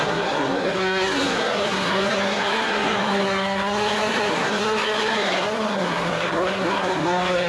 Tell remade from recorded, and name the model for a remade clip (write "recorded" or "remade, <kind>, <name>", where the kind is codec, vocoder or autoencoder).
remade, codec, SNAC